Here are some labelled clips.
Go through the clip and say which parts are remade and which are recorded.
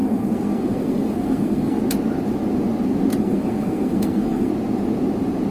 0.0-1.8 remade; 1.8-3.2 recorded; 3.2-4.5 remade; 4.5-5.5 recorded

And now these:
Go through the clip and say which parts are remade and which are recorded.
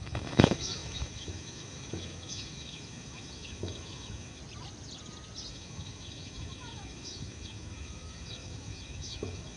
0.0-4.4 remade; 4.4-5.5 recorded; 5.5-9.6 remade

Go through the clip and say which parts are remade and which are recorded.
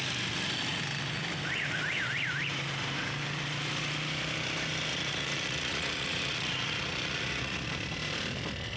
0.0-4.9 recorded; 4.9-7.7 remade; 7.7-8.8 recorded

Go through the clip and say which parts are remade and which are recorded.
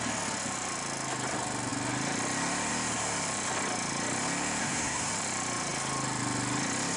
0.0-4.6 recorded; 4.6-5.1 remade; 5.1-7.0 recorded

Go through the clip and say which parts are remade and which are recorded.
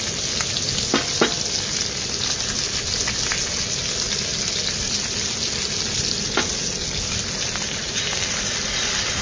0.0-9.2 recorded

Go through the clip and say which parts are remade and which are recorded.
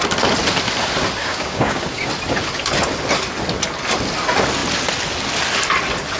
0.0-1.2 recorded; 1.2-2.1 remade; 2.1-6.2 recorded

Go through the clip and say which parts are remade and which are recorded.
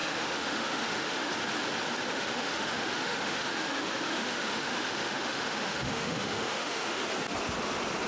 0.0-1.3 remade; 1.3-2.1 recorded; 2.1-7.0 remade; 7.0-8.1 recorded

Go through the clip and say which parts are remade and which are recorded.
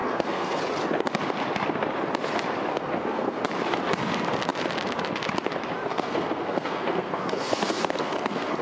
0.0-0.6 remade; 0.6-2.7 recorded; 2.7-3.4 remade; 3.4-5.9 recorded; 5.9-8.6 remade